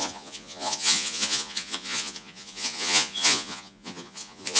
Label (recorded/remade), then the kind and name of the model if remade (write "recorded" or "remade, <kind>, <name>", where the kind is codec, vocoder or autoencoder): remade, vocoder, Vocos